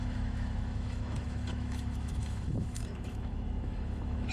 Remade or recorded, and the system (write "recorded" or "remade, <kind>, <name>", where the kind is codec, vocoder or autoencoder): remade, autoencoder, DAC-VAE